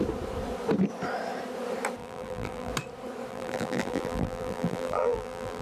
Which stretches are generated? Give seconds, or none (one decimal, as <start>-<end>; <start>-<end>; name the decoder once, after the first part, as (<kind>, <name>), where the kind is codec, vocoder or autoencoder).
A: 2.0-2.7 (vocoder, BigVGAN v2); 3.3-5.6